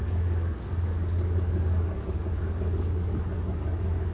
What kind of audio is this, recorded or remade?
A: remade